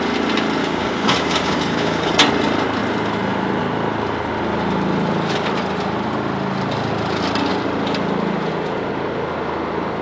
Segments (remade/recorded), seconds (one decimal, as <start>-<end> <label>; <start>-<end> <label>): 0.0-0.6 recorded; 0.6-2.1 remade; 2.1-10.0 recorded